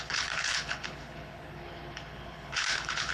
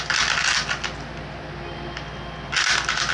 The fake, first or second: first